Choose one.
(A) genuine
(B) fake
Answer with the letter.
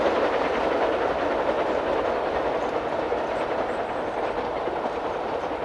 A